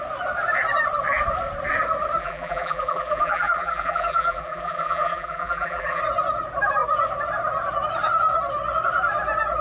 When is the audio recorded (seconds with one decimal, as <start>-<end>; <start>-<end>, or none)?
0.0-2.2; 6.0-9.6